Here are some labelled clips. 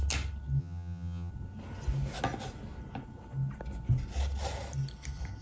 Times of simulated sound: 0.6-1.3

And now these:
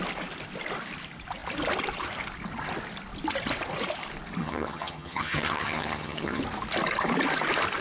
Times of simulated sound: 4.4-6.4